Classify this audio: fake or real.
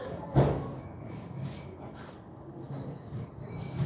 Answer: fake